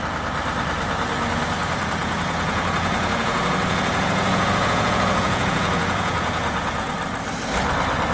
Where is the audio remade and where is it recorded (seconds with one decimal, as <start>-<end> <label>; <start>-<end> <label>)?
0.0-2.0 recorded; 2.0-6.9 remade; 6.9-8.1 recorded